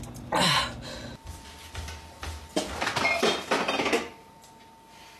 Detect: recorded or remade recorded